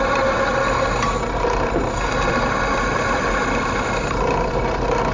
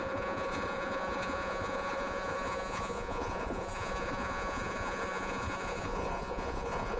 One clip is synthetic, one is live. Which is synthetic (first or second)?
second